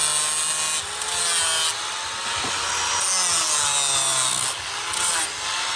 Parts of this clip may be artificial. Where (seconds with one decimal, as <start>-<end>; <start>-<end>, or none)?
none